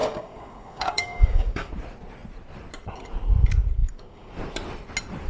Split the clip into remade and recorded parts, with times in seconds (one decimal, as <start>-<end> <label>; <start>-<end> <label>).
0.0-1.7 remade; 1.7-3.8 recorded; 3.8-4.3 remade; 4.3-5.3 recorded